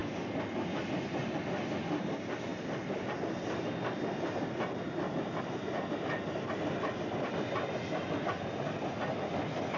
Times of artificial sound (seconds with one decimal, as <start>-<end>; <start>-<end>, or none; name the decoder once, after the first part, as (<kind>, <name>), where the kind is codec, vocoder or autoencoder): none